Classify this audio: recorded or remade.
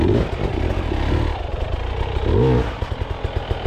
recorded